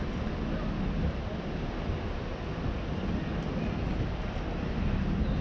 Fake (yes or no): no